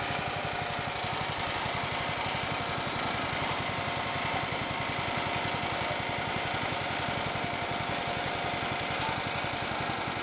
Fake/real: real